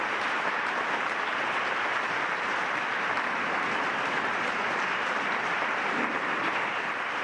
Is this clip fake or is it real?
fake